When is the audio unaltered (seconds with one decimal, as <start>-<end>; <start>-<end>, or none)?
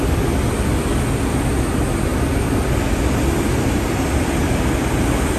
0.0-5.4